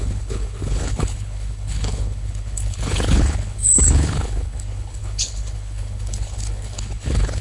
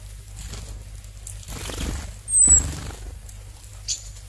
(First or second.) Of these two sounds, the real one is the second